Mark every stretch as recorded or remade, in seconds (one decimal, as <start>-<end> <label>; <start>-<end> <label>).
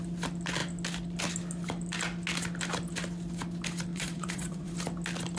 0.0-3.9 recorded; 3.9-4.7 remade; 4.7-5.4 recorded